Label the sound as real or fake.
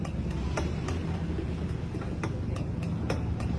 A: real